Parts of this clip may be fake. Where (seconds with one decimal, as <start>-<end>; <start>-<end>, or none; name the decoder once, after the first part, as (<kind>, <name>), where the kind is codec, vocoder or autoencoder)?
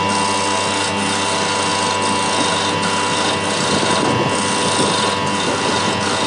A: none